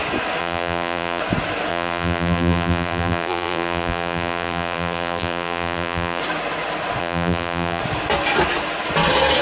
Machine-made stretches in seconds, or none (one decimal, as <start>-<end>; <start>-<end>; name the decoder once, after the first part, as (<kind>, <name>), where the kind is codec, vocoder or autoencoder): 0.4-1.2 (vocoder, BigVGAN v2); 1.7-6.2; 7.0-7.8

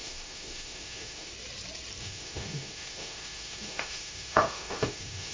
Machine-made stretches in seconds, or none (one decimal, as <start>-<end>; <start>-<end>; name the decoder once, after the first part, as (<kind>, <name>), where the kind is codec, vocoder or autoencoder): 0.0-1.3 (autoencoder, DAC-VAE); 2.0-5.3

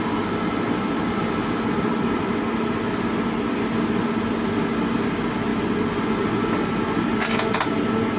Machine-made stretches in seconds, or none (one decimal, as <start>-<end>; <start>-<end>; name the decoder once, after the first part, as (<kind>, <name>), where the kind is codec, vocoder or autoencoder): none

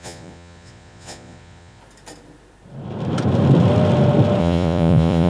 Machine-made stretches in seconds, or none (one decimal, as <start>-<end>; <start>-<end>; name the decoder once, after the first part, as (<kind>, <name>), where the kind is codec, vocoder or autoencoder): 0.0-1.8 (vocoder, Vocos); 4.4-5.3

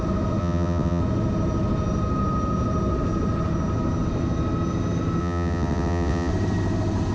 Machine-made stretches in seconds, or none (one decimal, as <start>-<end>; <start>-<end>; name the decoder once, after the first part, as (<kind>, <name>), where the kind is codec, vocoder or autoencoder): 0.4-1.0 (vocoder, WaveNeXt); 5.2-6.3

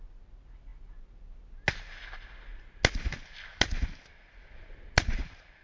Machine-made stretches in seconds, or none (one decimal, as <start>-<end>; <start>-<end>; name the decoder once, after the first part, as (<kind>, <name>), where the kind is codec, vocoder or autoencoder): none

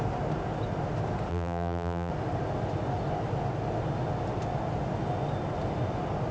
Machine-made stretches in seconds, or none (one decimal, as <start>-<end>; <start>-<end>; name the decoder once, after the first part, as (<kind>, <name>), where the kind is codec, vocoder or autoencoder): 1.3-2.1 (vocoder, BigVGAN v2)